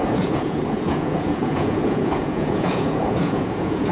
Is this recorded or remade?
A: remade